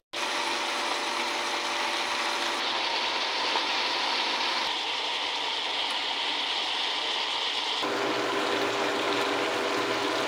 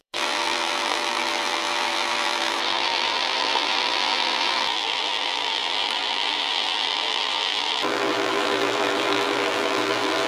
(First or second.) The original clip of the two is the first